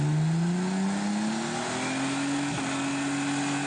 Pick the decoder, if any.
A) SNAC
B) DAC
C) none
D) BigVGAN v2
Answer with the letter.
C